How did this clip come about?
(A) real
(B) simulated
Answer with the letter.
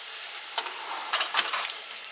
B